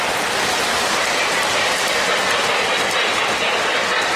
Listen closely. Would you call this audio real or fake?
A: real